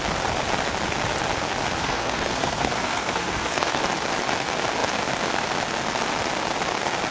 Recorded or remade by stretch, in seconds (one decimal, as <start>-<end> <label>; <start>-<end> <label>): 0.0-1.8 recorded; 1.8-3.8 remade; 3.8-7.1 recorded